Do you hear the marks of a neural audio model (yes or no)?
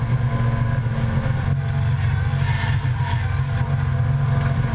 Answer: no